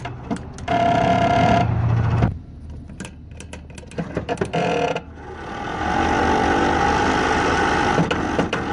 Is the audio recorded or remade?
recorded